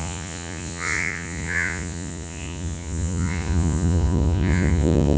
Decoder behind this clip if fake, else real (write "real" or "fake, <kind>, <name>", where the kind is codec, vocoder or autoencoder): fake, vocoder, Vocos